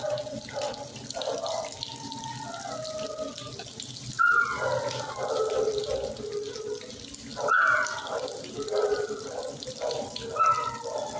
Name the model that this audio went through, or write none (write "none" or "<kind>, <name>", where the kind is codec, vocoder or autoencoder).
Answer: none